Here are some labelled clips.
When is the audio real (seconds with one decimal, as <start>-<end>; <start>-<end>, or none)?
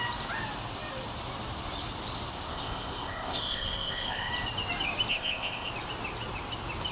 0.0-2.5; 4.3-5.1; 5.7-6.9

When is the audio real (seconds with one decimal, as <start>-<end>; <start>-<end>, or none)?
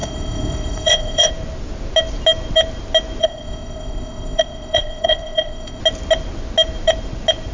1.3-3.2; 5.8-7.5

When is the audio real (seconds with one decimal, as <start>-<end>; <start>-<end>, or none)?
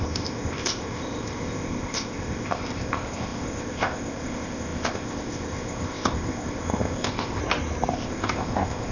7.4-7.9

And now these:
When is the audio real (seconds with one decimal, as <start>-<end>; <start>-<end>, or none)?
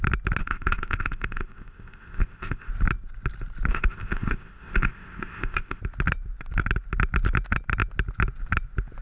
0.0-0.4; 2.7-3.7; 5.8-9.0